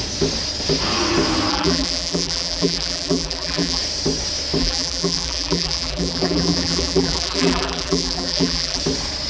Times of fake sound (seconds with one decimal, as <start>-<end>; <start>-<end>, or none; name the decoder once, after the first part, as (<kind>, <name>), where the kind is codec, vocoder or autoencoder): 1.5-3.8 (vocoder, BigVGAN v2); 4.6-8.8